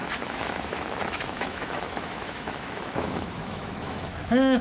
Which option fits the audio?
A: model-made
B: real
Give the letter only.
A